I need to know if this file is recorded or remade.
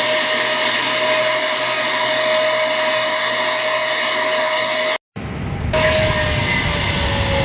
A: recorded